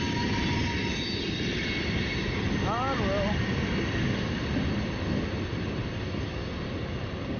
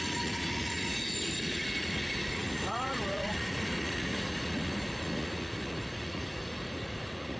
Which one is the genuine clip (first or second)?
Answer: first